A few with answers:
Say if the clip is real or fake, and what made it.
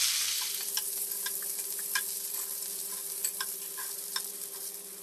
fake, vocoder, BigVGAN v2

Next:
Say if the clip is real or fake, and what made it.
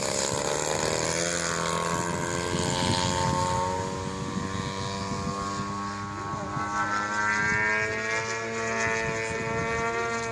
real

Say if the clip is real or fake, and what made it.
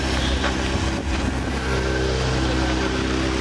real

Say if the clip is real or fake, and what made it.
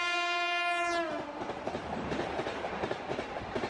fake, vocoder, BigVGAN v2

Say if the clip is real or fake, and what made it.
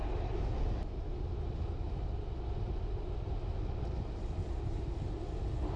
real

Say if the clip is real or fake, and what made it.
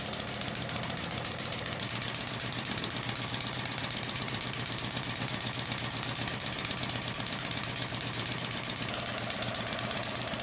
fake, vocoder, BigVGAN v2